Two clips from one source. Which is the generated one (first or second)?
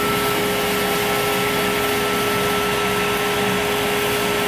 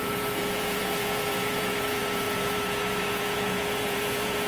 second